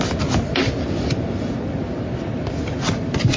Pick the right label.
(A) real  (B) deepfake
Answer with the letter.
A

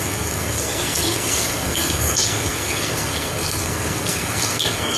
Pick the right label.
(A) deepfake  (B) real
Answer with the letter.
A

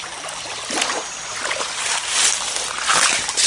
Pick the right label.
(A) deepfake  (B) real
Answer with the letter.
B